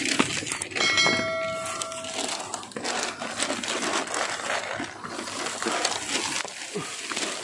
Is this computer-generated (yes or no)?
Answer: no